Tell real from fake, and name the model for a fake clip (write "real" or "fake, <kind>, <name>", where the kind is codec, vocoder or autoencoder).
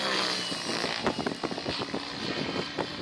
real